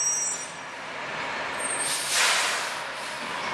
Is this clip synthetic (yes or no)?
no